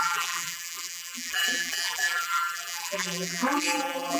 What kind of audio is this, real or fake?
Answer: fake